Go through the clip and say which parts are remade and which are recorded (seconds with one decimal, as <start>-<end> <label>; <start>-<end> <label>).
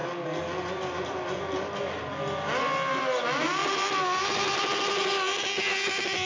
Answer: 0.0-3.6 recorded; 3.6-4.6 remade; 4.6-6.3 recorded